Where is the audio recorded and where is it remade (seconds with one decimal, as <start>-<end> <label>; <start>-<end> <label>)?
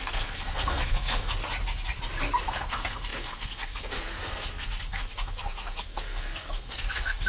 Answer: 0.0-1.4 remade; 1.4-2.4 recorded; 2.4-7.3 remade